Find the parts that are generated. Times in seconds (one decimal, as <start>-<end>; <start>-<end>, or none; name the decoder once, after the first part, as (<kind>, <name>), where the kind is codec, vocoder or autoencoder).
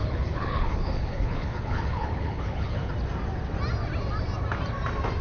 0.0-2.9 (codec, HILCodec)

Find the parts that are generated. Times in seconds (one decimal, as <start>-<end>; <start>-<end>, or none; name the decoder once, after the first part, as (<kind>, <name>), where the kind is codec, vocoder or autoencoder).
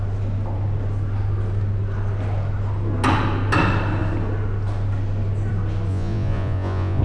5.9-7.0 (vocoder, Vocos)